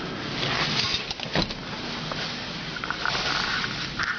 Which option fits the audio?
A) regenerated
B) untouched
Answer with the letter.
B